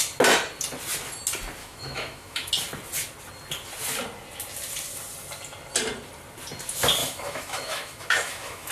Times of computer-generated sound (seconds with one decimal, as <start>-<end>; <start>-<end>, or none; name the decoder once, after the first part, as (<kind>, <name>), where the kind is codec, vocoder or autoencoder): 1.6-2.5 (autoencoder, DAC-VAE); 7.0-8.7